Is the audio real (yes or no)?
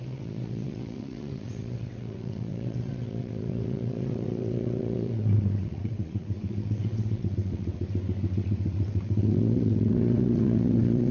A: no